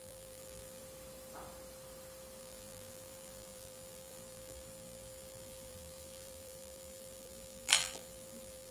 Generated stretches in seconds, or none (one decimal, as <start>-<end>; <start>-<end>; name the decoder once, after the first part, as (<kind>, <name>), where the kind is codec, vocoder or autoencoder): 0.0-0.8 (vocoder, BigVGAN v2); 2.4-8.7